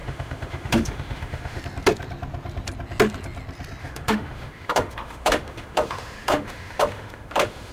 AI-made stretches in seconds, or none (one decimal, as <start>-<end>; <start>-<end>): 0.0-1.6; 3.8-7.7